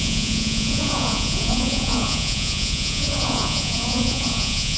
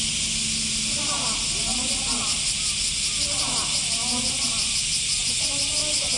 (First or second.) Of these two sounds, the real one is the second